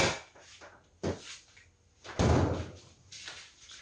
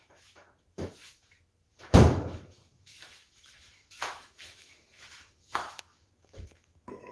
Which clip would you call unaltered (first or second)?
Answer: first